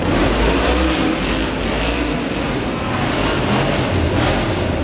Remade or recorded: recorded